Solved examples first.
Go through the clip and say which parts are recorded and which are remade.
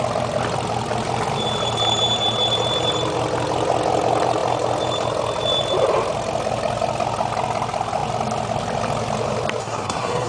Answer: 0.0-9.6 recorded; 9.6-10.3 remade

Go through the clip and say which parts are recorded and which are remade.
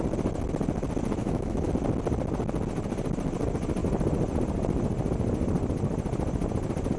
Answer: 0.0-1.2 recorded; 1.2-1.7 remade; 1.7-7.0 recorded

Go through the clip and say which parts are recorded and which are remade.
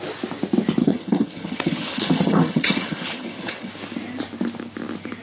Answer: 0.0-0.8 recorded; 0.8-3.7 remade; 3.7-5.2 recorded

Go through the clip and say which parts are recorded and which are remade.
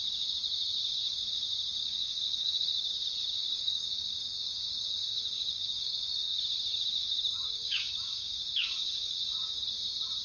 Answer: 0.0-1.8 recorded; 1.8-2.9 remade; 2.9-3.4 recorded; 3.4-6.4 remade; 6.4-7.0 recorded; 7.0-9.7 remade; 9.7-10.2 recorded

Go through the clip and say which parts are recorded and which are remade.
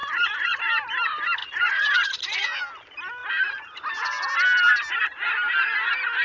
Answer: 0.0-0.6 remade; 0.6-1.4 recorded; 1.4-2.6 remade; 2.6-6.2 recorded